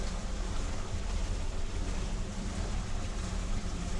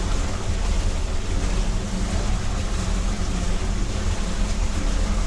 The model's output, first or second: first